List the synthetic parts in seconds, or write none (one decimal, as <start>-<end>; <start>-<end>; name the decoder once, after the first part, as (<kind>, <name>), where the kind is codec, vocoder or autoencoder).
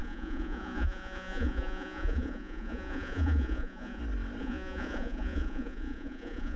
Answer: 0.0-4.0 (vocoder, Vocos); 4.4-6.6